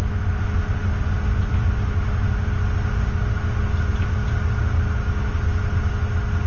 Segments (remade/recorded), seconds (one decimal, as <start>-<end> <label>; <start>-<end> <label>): 0.0-6.5 recorded